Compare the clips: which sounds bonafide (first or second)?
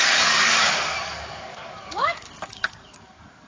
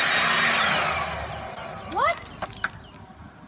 second